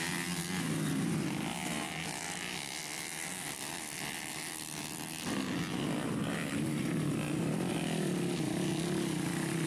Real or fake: real